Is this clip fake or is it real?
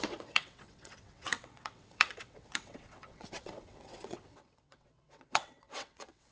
fake